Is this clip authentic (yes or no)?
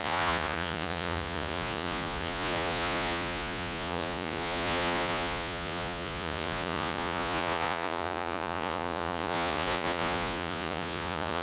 no